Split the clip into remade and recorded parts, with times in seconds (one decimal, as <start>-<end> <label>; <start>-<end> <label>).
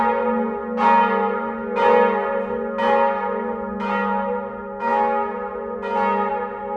0.0-6.8 recorded